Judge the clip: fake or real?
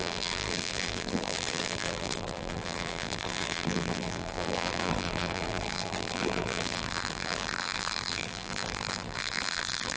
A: fake